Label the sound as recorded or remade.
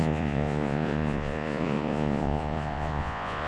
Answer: remade